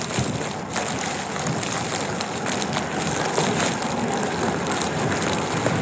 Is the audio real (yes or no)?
yes